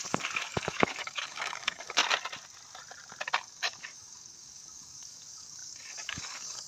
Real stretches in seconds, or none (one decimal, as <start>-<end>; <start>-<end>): 2.0-3.4